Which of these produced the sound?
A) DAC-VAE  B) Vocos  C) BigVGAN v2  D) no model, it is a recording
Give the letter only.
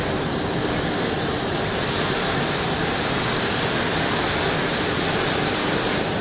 C